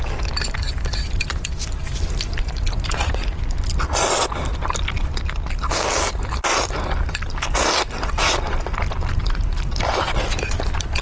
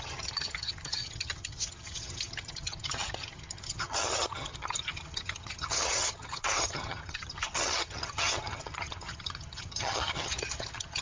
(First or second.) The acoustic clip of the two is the first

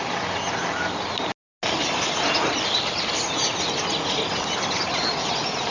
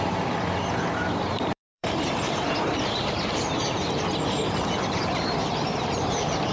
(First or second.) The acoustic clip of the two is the first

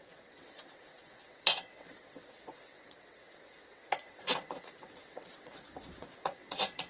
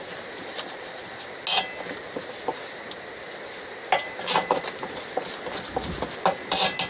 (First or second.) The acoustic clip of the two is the second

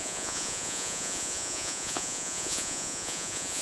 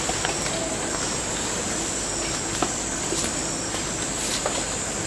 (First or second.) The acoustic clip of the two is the second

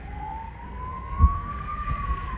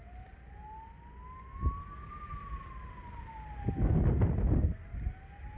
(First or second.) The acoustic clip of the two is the second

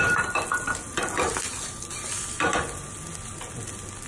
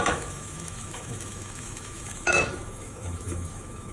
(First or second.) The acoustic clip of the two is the first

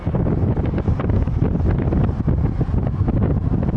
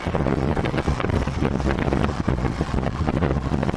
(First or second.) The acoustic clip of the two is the first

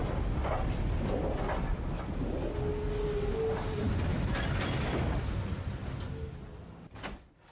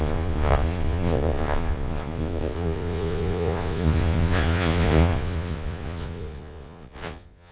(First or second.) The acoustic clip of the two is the first